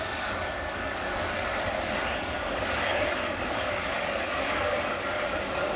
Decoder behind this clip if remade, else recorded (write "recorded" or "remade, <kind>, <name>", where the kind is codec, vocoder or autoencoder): remade, codec, DAC